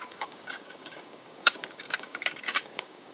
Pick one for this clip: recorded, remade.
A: remade